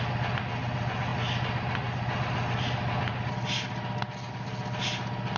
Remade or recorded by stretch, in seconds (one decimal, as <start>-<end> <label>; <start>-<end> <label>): 0.0-5.4 recorded